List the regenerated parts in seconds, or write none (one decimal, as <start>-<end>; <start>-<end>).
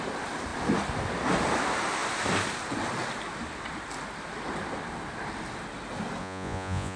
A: 6.2-7.0